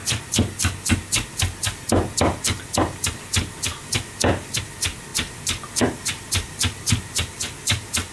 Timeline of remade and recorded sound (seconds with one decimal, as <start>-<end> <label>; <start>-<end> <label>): 0.0-8.1 recorded